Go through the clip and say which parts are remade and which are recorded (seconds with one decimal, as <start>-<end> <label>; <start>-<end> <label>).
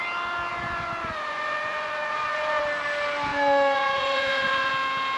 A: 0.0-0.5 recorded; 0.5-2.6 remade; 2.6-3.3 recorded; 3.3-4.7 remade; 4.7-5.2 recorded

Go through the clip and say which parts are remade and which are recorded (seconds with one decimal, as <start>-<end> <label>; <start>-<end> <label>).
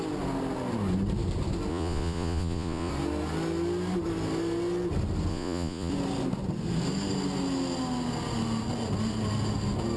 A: 0.0-1.7 recorded; 1.7-2.9 remade; 2.9-5.3 recorded; 5.3-5.9 remade; 5.9-10.0 recorded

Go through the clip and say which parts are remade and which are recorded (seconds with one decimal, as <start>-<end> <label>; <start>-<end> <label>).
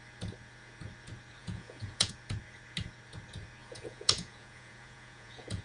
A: 0.0-1.4 recorded; 1.4-2.1 remade; 2.1-3.6 recorded; 3.6-5.6 remade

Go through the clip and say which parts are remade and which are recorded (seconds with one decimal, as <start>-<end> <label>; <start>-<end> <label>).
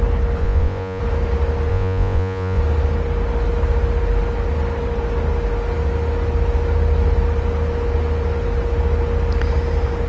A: 0.0-0.4 recorded; 0.4-1.0 remade; 1.0-1.7 recorded; 1.7-2.6 remade; 2.6-10.1 recorded